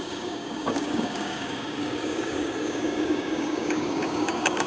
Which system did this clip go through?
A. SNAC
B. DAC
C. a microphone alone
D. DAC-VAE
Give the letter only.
B